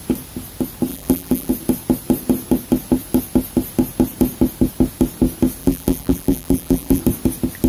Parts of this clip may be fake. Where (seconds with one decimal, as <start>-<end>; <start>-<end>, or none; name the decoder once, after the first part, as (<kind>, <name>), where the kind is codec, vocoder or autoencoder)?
0.9-1.5 (vocoder, BigVGAN v2); 5.6-7.0